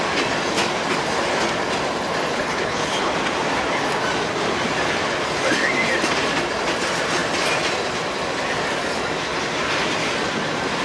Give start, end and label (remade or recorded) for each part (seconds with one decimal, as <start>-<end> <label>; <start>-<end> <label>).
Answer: 0.0-2.3 recorded; 2.3-3.1 remade; 3.1-10.8 recorded